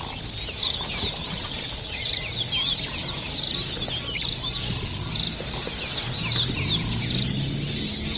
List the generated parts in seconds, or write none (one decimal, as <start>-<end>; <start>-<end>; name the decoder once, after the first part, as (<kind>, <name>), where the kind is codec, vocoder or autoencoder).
1.2-2.4 (vocoder, BigVGAN v2)